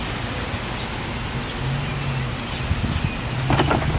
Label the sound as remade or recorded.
recorded